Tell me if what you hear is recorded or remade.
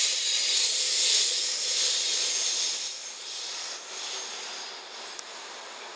remade